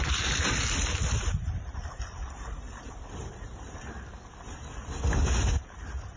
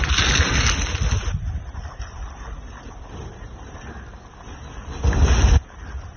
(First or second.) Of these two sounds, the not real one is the first